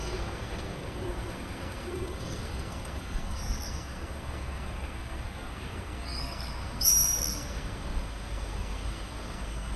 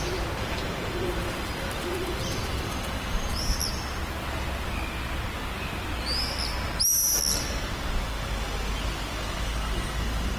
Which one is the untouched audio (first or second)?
second